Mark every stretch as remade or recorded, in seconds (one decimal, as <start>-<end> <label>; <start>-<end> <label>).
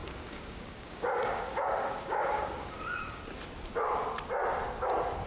0.0-3.2 remade; 3.2-5.3 recorded